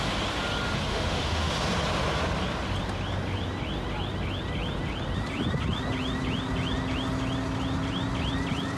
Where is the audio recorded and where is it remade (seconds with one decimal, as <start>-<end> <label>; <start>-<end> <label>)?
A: 0.0-0.9 recorded; 0.9-1.5 remade; 1.5-8.8 recorded